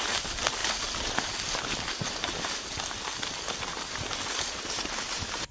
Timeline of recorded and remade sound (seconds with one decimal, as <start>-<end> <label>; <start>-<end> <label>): 0.0-5.5 recorded